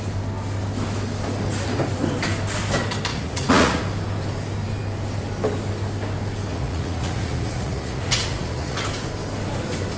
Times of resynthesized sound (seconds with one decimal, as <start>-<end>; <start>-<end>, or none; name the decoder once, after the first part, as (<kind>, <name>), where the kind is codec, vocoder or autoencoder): 3.1-3.8 (vocoder, Vocos); 6.5-8.8